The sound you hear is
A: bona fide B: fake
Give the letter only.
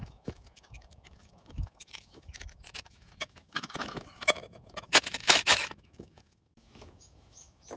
B